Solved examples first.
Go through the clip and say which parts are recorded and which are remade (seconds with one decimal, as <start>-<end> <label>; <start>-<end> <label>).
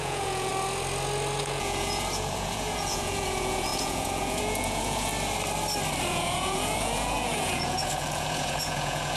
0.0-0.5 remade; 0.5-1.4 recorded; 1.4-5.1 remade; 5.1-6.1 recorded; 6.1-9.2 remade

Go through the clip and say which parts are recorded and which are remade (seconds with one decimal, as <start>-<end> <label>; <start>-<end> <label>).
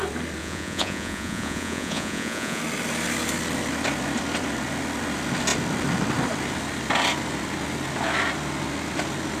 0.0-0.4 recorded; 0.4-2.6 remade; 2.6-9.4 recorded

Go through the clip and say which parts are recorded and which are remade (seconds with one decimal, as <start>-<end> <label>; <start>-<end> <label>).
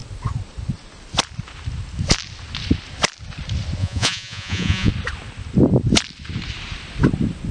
0.0-3.8 recorded; 3.8-4.9 remade; 4.9-7.5 recorded